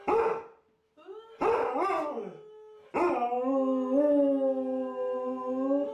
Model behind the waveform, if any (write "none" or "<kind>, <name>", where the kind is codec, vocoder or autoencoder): none